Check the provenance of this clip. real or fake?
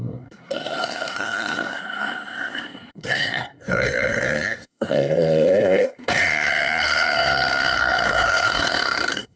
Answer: fake